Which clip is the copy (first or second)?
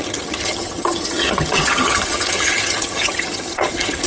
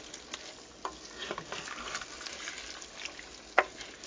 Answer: first